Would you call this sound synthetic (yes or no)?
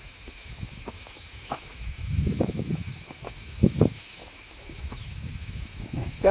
yes